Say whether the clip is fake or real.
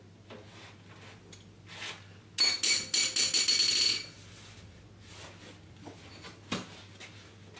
real